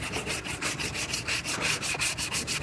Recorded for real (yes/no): yes